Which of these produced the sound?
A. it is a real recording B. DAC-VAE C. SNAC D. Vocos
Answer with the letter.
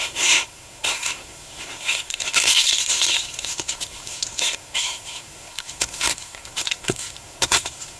C